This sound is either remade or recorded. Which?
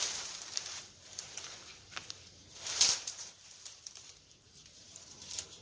remade